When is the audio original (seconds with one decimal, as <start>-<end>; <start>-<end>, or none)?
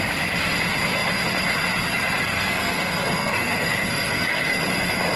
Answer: 0.0-2.2; 4.6-5.2